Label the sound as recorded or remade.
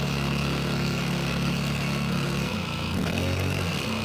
remade